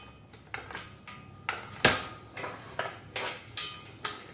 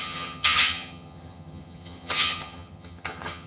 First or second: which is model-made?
second